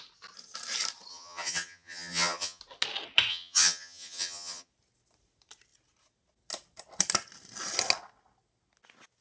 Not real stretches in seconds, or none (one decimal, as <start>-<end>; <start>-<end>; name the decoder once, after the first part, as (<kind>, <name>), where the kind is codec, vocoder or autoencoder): 1.1-2.6 (vocoder, HiFi-GAN); 3.3-4.7